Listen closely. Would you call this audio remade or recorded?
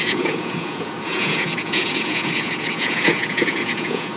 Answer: remade